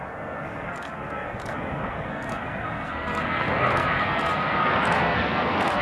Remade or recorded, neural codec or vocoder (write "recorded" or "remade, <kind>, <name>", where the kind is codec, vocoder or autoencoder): remade, codec, SNAC